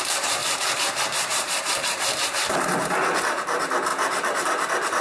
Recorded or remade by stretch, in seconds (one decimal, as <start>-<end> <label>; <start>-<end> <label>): 0.0-3.9 remade; 3.9-5.0 recorded